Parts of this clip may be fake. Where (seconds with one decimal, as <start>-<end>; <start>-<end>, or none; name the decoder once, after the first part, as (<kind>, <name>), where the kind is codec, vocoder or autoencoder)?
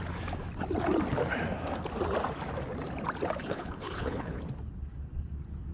3.4-4.4 (codec, HILCodec)